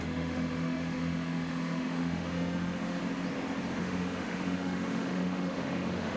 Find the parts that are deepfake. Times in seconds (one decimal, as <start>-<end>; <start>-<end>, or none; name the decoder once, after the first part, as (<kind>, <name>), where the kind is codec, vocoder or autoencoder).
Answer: 0.0-3.0 (autoencoder, DAC-VAE); 3.8-6.2